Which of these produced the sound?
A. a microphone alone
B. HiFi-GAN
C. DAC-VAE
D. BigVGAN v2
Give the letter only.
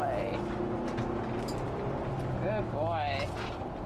A